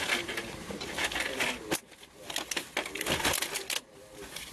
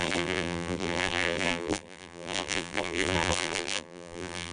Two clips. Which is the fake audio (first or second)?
second